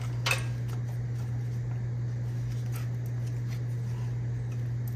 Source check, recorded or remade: recorded